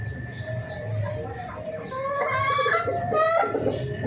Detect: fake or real real